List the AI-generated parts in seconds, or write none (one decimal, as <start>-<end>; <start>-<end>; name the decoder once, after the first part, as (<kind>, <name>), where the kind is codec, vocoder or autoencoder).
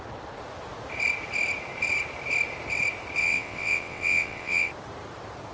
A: 3.2-4.7 (vocoder, WaveNeXt)